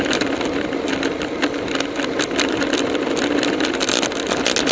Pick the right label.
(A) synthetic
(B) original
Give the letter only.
B